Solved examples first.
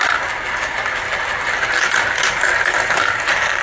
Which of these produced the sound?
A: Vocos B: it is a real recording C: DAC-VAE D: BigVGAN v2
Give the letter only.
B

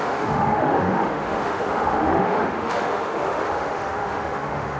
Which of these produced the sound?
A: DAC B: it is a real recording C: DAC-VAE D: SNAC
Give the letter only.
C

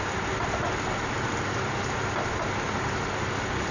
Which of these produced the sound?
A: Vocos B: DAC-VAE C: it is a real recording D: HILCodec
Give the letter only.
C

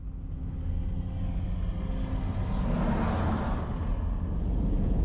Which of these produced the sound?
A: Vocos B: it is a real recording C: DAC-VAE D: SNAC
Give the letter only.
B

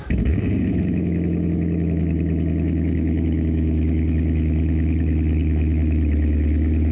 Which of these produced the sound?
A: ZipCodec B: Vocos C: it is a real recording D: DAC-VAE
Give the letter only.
D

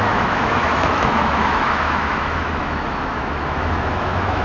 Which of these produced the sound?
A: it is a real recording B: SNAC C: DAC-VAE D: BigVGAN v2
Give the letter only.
C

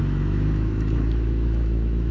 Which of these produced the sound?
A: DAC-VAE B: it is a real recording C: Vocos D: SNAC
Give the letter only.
A